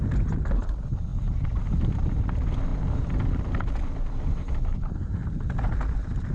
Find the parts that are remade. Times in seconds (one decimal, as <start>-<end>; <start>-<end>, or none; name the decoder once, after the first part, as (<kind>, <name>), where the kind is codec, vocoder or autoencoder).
none